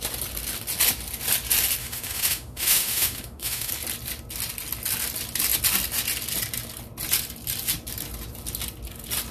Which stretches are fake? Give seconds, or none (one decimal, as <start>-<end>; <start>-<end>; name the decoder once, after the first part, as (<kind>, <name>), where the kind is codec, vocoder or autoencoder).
1.8-3.7 (autoencoder, DAC-VAE)